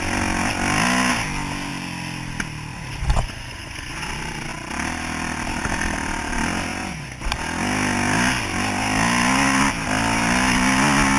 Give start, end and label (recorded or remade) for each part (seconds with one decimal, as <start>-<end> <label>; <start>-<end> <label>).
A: 0.0-2.7 recorded; 2.7-4.1 remade; 4.1-6.7 recorded; 6.7-7.3 remade; 7.3-11.2 recorded